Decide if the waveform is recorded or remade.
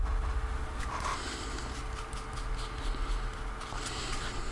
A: recorded